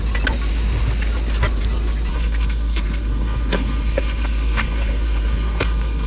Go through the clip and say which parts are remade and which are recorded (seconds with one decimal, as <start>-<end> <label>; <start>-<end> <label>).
0.0-2.1 recorded; 2.1-6.1 remade